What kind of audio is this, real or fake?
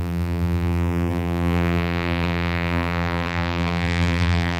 fake